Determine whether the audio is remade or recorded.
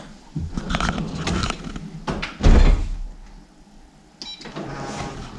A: recorded